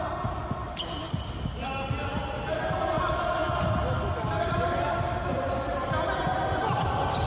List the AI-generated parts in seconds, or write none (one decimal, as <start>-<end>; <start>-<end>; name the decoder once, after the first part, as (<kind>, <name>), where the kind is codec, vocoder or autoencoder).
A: none